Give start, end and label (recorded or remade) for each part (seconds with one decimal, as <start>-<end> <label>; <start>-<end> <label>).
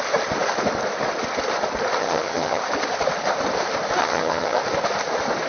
0.0-2.0 recorded; 2.0-2.6 remade; 2.6-4.0 recorded; 4.0-4.6 remade; 4.6-5.5 recorded